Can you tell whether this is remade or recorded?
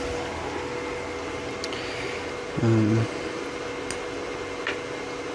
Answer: recorded